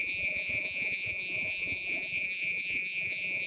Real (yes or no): no